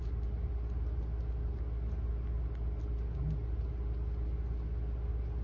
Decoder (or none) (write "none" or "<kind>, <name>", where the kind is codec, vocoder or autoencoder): none